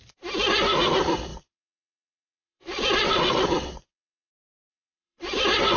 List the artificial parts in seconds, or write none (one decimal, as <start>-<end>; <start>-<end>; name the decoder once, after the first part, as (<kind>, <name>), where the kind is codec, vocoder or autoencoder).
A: 1.3-4.3 (vocoder, WaveNeXt); 4.7-5.8